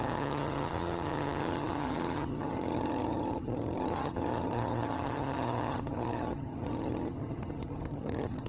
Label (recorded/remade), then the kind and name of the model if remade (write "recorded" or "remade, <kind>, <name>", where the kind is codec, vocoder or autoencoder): remade, vocoder, HiFi-GAN